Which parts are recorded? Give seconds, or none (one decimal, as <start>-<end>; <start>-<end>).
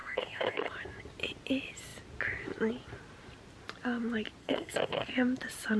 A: 0.7-4.4; 5.1-5.8